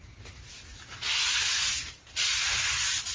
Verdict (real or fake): real